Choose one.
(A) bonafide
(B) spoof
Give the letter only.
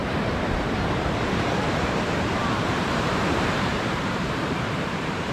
B